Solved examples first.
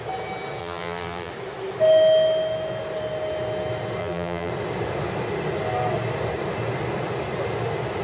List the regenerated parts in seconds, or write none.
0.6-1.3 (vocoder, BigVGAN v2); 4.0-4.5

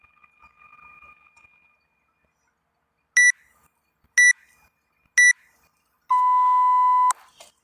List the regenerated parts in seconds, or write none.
none

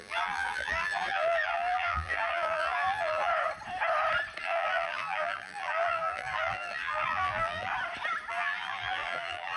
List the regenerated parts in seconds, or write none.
0.0-3.3 (vocoder, BigVGAN v2); 4.4-7.7; 8.3-9.6

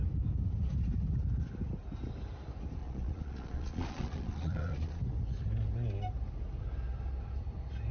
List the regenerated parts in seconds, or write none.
2.8-5.0 (vocoder, Vocos)

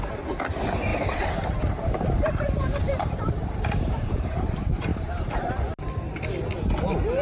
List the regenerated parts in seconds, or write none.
0.9-4.5 (vocoder, BigVGAN v2); 4.9-5.4

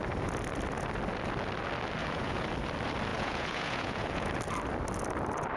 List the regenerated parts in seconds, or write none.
2.0-2.5 (vocoder, Vocos); 3.1-4.3

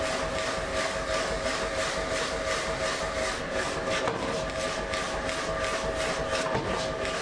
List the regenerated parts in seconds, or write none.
0.7-1.6 (codec, DAC); 3.2-4.0

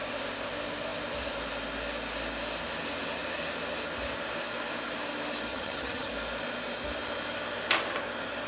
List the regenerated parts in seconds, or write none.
5.5-6.1 (vocoder, HiFi-GAN)